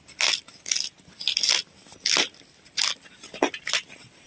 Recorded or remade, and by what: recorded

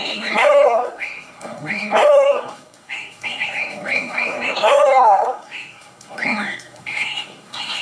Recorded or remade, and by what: remade, codec, SNAC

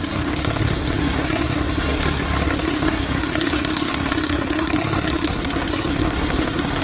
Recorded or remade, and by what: remade, codec, SNAC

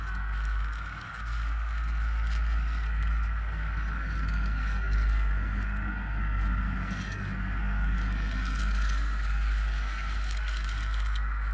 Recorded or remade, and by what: remade, codec, SNAC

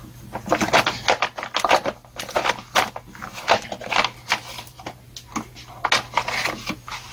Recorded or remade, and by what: recorded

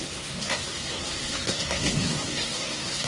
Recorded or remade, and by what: remade, codec, SNAC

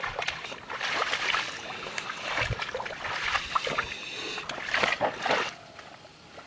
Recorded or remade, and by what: recorded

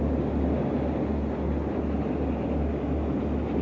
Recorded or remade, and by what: recorded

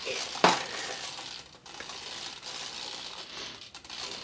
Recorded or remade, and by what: recorded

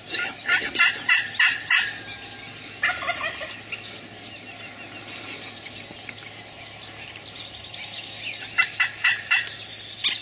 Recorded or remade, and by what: recorded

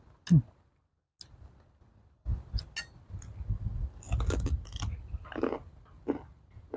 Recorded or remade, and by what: recorded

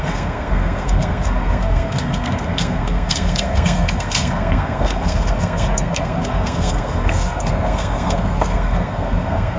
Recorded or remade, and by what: remade, codec, SNAC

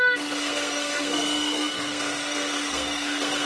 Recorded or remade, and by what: remade, codec, SNAC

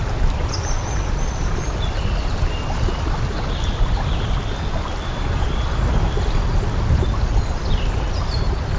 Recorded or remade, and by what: recorded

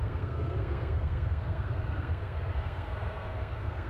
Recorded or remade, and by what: remade, codec, SNAC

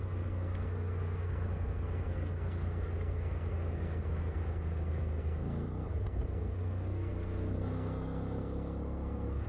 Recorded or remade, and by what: remade, codec, SNAC